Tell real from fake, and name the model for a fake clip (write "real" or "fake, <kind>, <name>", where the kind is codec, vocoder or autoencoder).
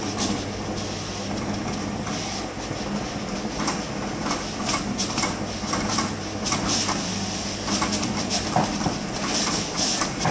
real